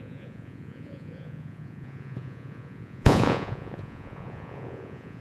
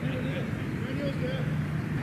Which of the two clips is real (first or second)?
second